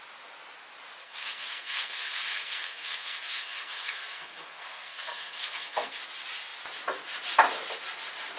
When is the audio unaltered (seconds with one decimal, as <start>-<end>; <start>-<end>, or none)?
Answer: 0.0-1.0; 6.0-8.4